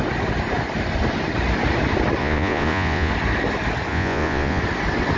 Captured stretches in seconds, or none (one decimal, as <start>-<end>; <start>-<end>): 0.0-2.2; 3.1-3.9; 4.6-5.2